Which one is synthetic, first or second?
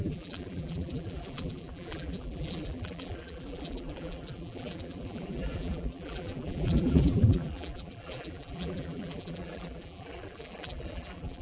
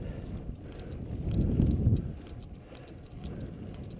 first